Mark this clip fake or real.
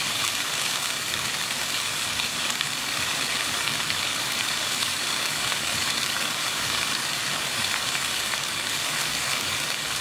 fake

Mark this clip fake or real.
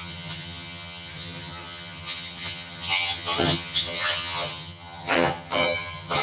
fake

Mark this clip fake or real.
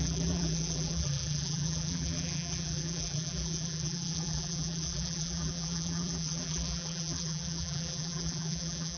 fake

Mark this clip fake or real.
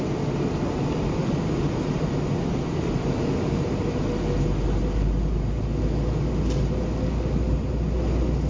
real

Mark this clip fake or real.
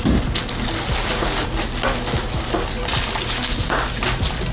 real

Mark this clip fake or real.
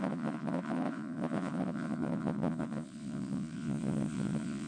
fake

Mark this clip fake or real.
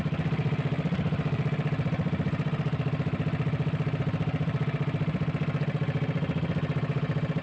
real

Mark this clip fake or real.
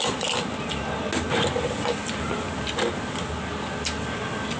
real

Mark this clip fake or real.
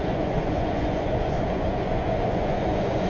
fake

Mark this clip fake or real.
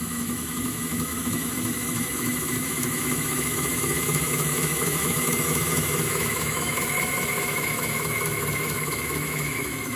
fake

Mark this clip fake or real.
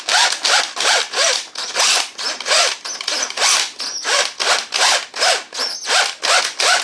real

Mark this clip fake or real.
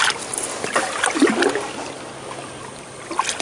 real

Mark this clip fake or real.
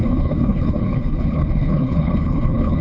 fake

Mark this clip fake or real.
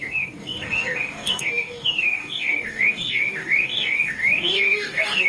fake